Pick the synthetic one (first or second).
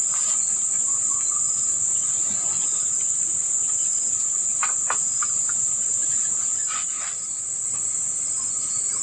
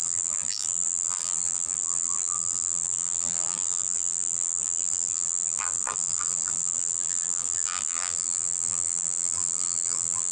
second